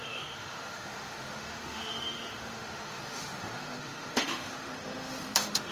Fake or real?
fake